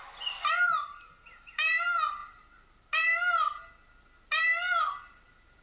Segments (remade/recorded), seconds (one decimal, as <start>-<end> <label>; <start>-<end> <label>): 0.0-5.6 recorded